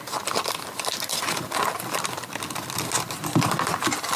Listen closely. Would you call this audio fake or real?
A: real